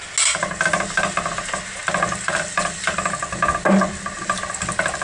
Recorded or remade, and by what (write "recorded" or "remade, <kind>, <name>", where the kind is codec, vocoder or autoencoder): recorded